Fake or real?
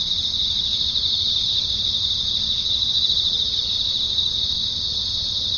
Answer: real